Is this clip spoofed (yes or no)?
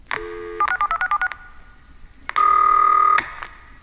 no